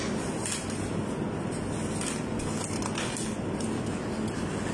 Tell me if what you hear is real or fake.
real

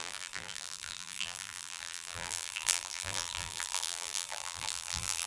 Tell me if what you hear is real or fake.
fake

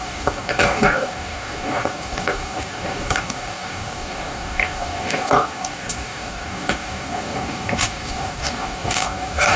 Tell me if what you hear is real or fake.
fake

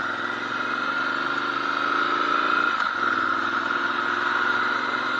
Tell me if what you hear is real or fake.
real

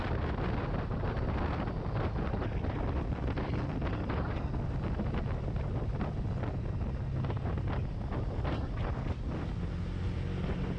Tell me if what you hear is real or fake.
real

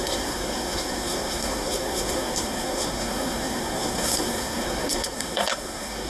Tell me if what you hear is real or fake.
fake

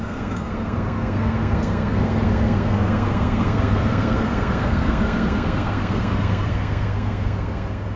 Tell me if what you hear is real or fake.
fake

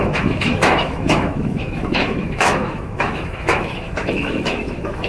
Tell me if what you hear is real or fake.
fake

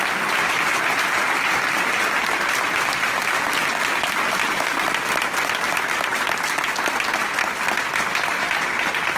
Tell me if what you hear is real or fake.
real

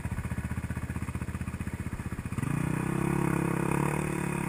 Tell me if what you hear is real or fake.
real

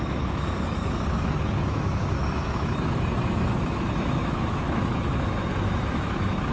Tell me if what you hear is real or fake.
fake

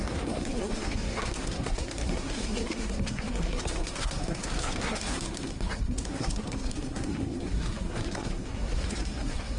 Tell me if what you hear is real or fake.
fake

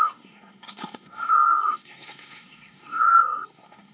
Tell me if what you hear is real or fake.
fake